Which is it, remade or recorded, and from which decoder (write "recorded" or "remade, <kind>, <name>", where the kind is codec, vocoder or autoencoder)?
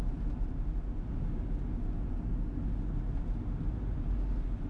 recorded